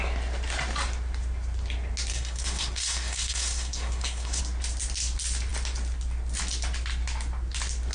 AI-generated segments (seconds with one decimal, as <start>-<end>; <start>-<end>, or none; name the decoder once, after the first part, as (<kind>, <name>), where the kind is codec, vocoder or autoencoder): 2.1-4.4 (codec, SNAC)